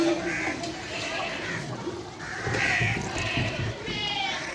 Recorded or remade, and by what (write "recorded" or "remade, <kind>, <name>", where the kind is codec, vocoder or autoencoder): remade, vocoder, BigVGAN v2